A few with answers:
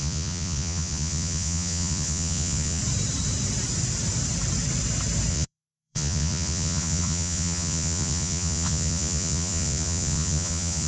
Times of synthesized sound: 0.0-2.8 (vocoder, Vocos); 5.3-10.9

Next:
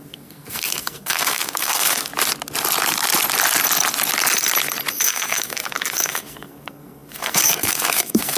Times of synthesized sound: 0.0-2.1 (codec, SNAC); 4.9-8.4